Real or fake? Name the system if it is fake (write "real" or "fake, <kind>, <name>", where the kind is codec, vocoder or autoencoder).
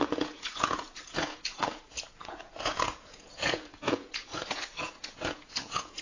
fake, vocoder, Vocos